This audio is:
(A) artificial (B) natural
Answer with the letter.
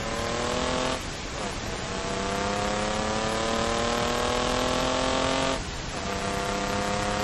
B